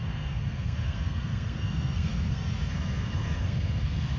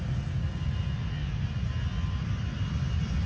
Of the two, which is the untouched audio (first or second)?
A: second